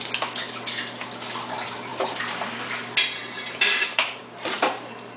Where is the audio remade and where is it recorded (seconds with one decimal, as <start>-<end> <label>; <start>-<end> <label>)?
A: 0.0-1.9 recorded; 1.9-2.6 remade; 2.6-3.2 recorded; 3.2-4.2 remade; 4.2-5.2 recorded